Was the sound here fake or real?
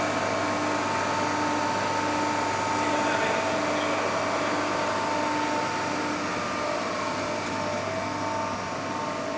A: real